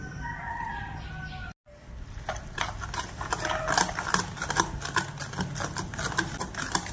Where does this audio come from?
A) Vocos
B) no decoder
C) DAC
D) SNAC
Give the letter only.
B